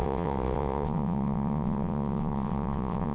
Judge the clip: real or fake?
fake